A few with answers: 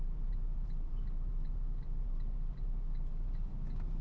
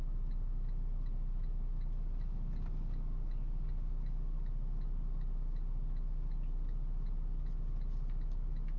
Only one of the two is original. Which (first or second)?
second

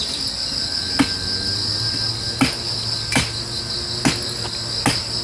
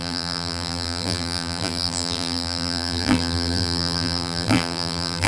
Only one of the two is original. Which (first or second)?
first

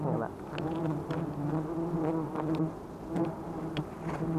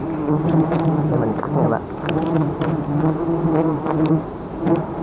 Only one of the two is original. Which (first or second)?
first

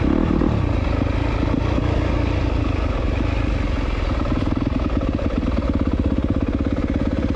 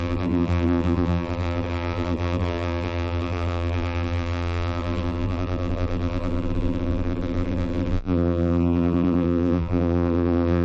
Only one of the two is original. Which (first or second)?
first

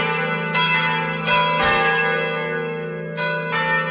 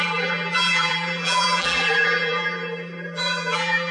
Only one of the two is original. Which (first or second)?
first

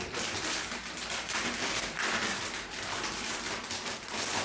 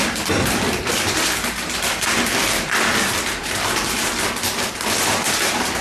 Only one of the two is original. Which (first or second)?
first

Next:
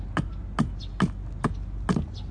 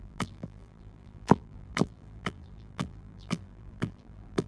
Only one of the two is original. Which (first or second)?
first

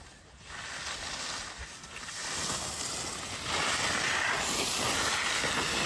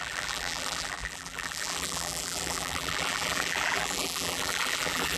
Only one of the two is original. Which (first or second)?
first